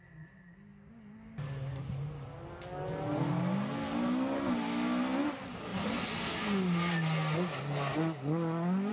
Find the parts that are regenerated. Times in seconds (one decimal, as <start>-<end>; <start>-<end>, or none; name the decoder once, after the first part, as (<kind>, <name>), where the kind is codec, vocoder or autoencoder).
none